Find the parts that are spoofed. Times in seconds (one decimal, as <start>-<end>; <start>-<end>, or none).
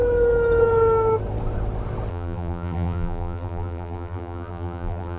2.1-5.2